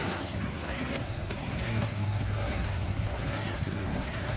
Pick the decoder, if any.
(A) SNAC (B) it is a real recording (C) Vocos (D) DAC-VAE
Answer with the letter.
A